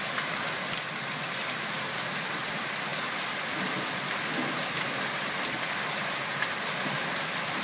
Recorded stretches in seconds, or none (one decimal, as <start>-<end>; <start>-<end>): 0.0-7.6